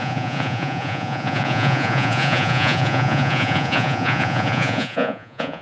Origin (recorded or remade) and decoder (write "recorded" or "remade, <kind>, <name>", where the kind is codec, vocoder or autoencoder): remade, vocoder, Vocos